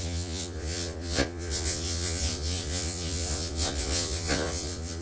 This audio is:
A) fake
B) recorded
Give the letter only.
A